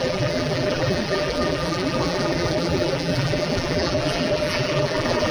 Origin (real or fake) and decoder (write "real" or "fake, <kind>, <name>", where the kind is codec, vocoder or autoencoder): fake, vocoder, BigVGAN v2